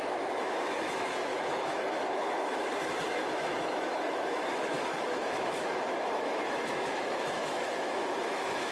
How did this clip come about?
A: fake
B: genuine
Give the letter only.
A